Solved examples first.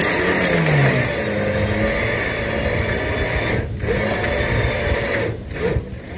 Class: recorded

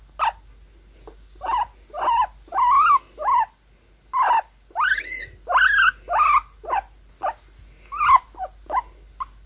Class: recorded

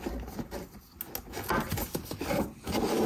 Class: recorded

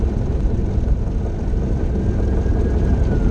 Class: recorded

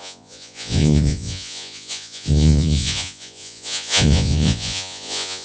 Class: remade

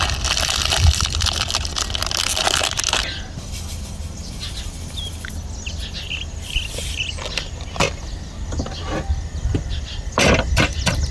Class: recorded